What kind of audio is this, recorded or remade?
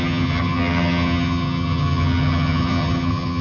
remade